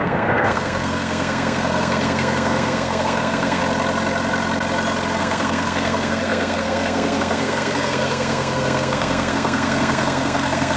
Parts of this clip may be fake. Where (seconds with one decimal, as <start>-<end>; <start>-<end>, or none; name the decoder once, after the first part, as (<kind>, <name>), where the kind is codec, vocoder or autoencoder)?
0.0-3.6 (codec, SNAC); 5.2-10.8